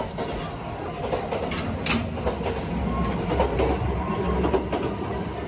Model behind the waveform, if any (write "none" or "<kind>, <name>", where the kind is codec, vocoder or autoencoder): none